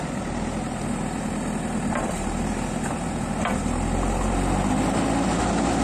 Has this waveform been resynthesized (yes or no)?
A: no